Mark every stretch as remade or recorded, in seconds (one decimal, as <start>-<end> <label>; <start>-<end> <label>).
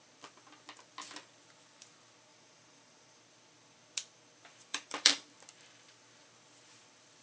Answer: 0.0-2.3 recorded; 2.3-3.2 remade; 3.2-4.7 recorded; 4.7-5.3 remade; 5.3-7.2 recorded